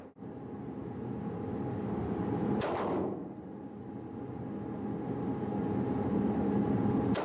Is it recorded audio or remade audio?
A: recorded